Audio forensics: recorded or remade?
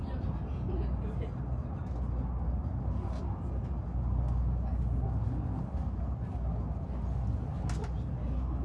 recorded